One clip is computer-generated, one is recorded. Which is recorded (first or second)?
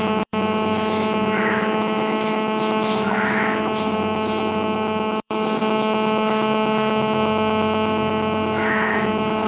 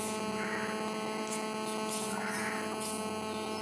second